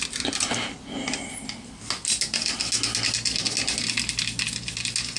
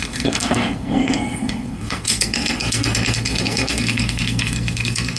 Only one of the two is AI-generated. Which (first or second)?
second